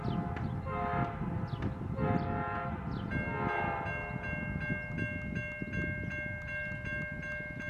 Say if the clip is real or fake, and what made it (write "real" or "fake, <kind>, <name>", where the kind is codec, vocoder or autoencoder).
real